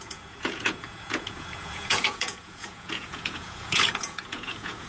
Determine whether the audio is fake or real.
fake